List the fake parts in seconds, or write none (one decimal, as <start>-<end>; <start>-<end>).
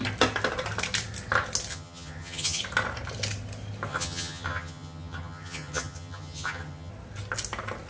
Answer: 1.7-2.6; 3.9-6.9